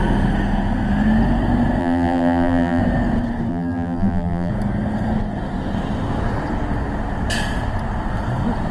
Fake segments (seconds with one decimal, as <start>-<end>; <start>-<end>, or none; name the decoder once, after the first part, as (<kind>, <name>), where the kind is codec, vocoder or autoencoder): 1.8-2.8 (vocoder, BigVGAN v2); 3.5-4.5